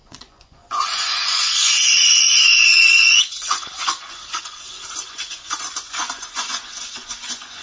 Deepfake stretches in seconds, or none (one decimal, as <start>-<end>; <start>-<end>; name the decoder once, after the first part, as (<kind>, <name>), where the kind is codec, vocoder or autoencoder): 0.0-7.6 (vocoder, Vocos)